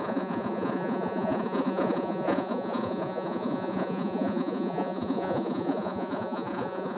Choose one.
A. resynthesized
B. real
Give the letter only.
A